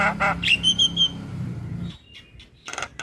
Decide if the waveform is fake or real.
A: real